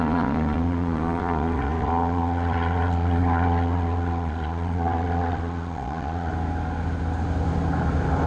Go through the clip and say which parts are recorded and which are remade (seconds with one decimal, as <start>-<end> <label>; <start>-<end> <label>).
0.0-6.3 remade; 6.3-8.3 recorded